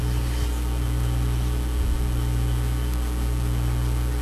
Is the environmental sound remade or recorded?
recorded